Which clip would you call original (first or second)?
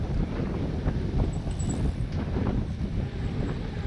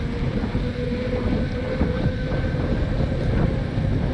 second